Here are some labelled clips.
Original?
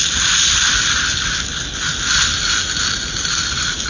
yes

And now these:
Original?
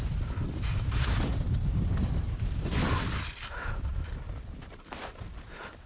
yes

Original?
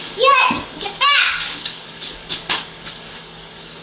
no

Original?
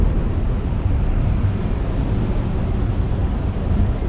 yes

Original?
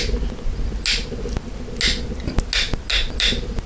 yes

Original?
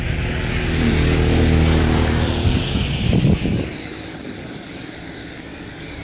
no